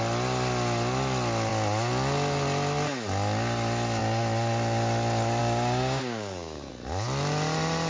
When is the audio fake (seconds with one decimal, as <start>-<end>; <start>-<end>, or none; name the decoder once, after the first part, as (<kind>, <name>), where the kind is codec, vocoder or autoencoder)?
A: 5.4-6.7 (codec, DAC)